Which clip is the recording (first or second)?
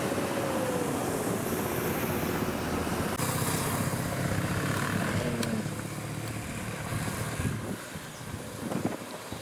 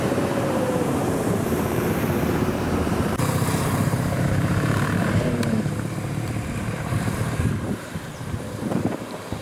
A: first